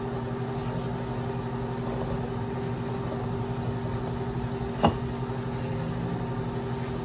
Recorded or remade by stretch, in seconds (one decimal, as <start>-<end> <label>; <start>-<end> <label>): 0.0-7.0 recorded